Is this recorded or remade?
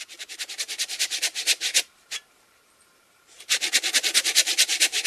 remade